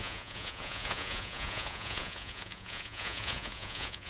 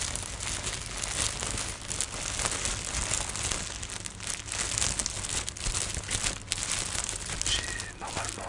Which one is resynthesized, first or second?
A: first